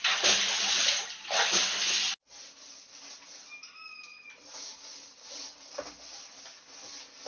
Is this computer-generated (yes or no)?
no